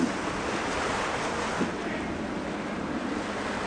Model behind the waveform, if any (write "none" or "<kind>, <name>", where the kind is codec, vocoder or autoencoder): none